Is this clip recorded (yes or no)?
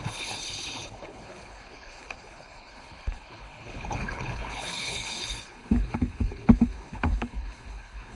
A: no